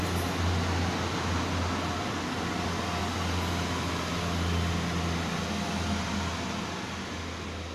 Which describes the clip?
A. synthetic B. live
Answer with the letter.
B